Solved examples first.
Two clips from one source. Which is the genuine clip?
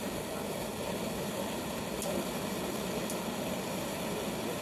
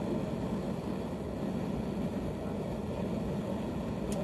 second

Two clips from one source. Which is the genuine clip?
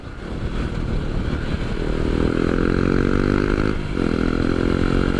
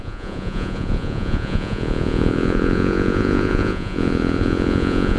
first